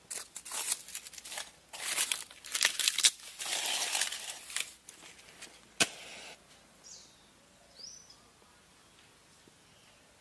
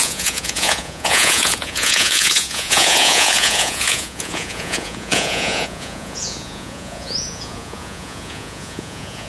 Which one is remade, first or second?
second